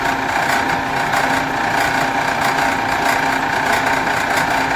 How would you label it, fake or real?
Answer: real